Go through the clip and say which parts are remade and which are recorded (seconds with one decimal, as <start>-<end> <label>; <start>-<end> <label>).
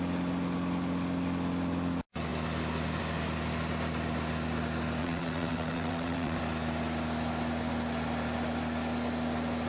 0.0-5.0 recorded; 5.0-6.4 remade; 6.4-9.7 recorded